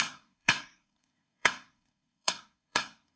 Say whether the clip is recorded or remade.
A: remade